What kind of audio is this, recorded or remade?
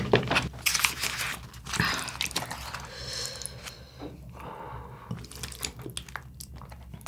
recorded